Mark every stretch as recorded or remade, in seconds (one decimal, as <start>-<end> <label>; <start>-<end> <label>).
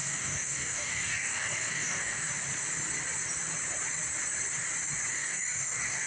0.0-2.3 remade; 2.3-5.1 recorded; 5.1-6.1 remade